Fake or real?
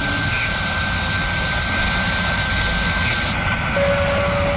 real